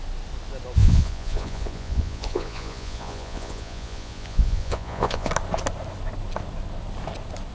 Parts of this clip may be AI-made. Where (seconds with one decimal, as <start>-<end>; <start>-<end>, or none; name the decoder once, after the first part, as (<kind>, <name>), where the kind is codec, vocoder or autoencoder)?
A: 0.8-5.3 (vocoder, Vocos)